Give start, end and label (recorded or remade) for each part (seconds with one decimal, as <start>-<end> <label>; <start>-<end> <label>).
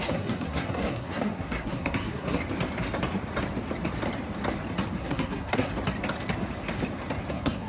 0.0-2.4 remade; 2.4-5.0 recorded; 5.0-5.7 remade; 5.7-7.3 recorded; 7.3-7.7 remade